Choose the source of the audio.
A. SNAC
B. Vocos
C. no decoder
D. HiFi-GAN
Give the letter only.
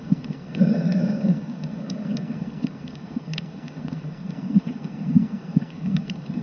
A